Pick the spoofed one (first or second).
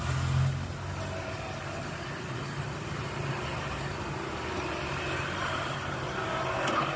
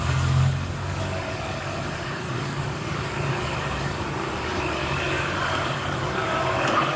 second